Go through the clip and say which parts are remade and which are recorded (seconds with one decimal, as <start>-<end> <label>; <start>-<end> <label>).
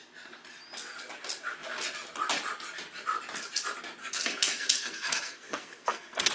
0.0-4.0 recorded; 4.0-6.3 remade